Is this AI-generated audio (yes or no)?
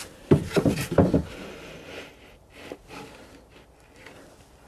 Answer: no